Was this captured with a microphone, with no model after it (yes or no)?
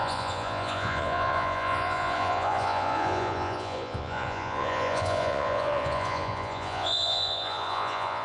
no